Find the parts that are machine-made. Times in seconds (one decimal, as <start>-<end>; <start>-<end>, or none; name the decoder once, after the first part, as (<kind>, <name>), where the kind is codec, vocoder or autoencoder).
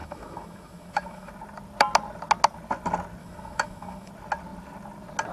0.0-1.3 (autoencoder, DAC-VAE); 3.2-4.1